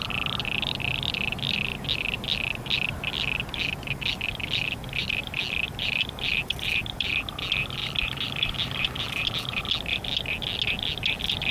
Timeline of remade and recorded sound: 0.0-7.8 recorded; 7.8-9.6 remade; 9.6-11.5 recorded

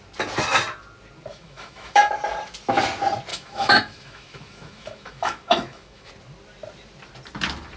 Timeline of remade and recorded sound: 0.0-1.3 recorded; 1.3-2.1 remade; 2.1-3.3 recorded; 3.3-6.1 remade; 6.1-7.8 recorded